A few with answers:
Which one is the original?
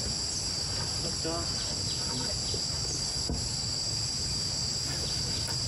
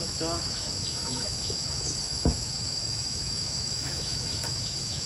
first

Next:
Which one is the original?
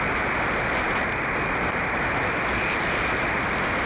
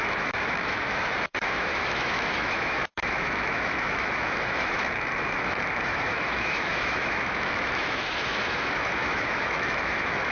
first